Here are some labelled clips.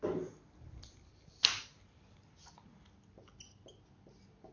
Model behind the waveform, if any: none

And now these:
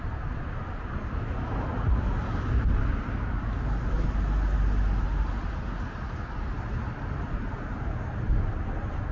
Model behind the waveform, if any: none